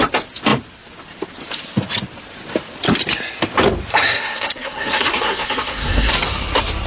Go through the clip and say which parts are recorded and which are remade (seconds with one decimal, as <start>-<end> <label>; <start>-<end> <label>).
0.0-4.0 recorded; 4.0-6.1 remade; 6.1-6.9 recorded